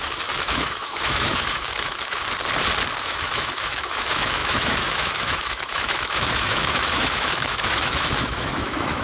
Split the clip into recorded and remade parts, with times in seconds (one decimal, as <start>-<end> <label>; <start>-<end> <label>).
0.0-2.2 remade; 2.2-3.0 recorded; 3.0-9.0 remade